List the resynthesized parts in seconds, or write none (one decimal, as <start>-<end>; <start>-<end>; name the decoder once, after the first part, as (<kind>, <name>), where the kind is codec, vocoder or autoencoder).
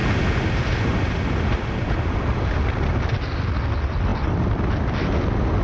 none